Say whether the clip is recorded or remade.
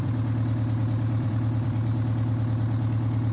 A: remade